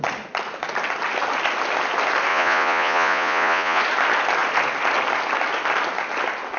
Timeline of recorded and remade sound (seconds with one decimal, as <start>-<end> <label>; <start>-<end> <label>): 0.0-2.3 recorded; 2.3-3.8 remade; 3.8-6.6 recorded